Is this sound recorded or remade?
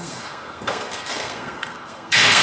remade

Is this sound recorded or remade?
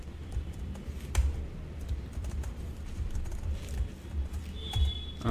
remade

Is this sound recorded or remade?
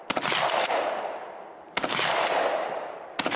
recorded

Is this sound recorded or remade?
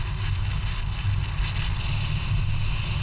recorded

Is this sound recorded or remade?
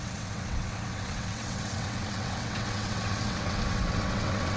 remade